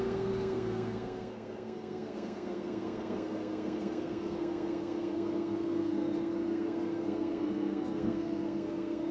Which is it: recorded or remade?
remade